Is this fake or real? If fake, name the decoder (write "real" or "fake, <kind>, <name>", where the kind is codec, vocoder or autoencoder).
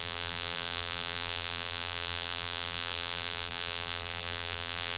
fake, vocoder, BigVGAN v2